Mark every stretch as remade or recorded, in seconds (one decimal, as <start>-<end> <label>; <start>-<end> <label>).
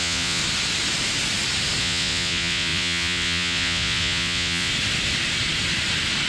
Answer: 0.0-0.4 remade; 0.4-1.8 recorded; 1.8-4.7 remade; 4.7-6.3 recorded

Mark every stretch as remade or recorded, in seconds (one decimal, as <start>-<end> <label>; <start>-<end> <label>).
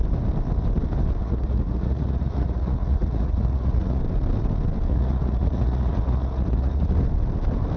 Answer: 0.0-1.2 recorded; 1.2-4.0 remade; 4.0-4.9 recorded; 4.9-6.9 remade; 6.9-7.8 recorded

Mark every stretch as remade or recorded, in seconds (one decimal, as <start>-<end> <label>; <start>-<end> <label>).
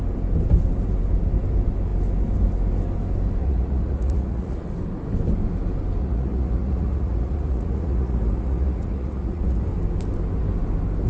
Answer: 0.0-3.4 recorded; 3.4-4.7 remade; 4.7-6.0 recorded; 6.0-9.6 remade; 9.6-11.1 recorded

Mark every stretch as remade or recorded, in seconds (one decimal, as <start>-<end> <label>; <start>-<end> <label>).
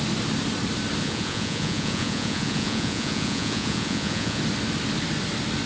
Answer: 0.0-1.0 recorded; 1.0-4.4 remade; 4.4-5.7 recorded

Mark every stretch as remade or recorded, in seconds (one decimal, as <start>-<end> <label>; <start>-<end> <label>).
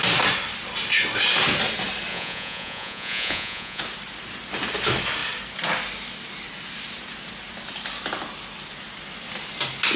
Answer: 0.0-2.1 recorded; 2.1-3.8 remade; 3.8-10.0 recorded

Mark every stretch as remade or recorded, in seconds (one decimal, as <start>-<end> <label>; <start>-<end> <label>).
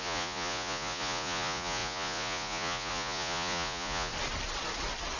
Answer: 0.0-4.1 remade; 4.1-5.2 recorded